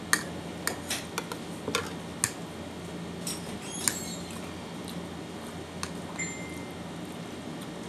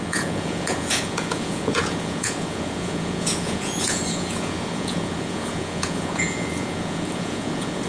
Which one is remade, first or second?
second